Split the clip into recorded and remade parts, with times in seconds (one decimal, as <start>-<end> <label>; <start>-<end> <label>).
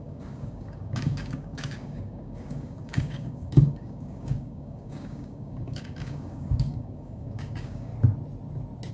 0.0-7.9 remade; 7.9-8.9 recorded